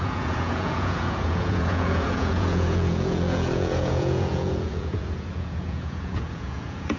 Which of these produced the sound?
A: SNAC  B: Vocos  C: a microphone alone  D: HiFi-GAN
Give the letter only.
B